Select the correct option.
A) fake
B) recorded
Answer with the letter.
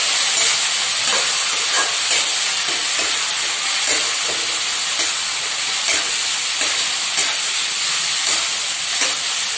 B